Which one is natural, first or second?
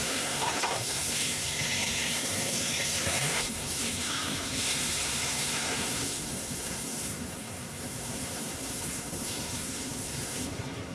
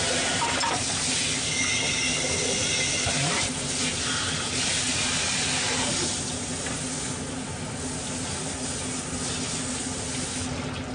second